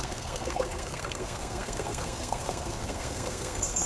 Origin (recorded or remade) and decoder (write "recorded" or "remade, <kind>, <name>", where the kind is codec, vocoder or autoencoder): remade, codec, SNAC